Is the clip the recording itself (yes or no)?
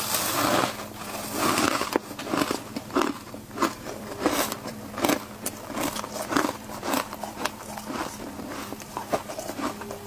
no